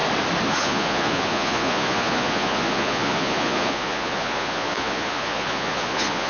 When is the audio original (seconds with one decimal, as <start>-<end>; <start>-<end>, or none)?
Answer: 0.0-0.5